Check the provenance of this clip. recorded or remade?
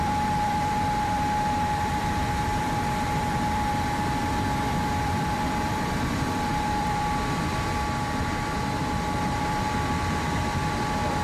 remade